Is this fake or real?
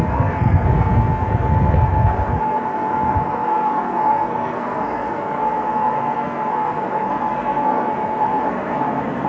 fake